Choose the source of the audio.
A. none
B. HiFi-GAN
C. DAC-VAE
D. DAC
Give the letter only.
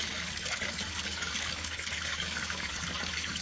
D